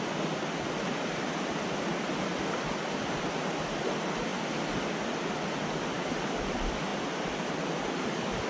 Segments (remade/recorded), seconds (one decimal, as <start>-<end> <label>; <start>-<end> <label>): 0.0-6.9 recorded; 6.9-8.0 remade; 8.0-8.5 recorded